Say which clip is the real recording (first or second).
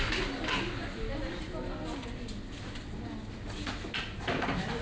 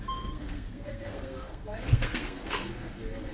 first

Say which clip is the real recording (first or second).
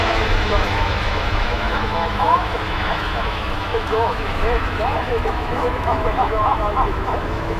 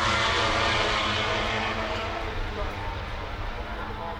second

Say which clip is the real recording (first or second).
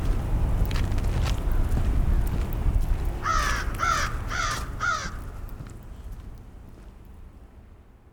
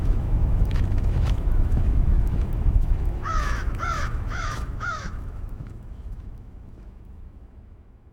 first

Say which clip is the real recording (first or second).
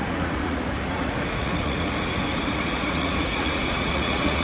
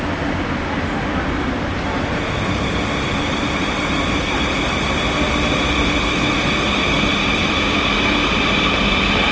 second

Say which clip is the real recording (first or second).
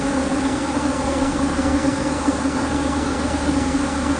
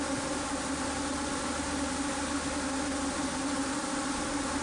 second